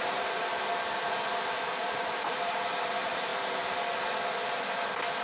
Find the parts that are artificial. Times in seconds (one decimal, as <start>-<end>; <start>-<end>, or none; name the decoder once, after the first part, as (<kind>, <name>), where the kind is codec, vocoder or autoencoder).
0.0-0.5 (vocoder, BigVGAN v2); 1.7-3.3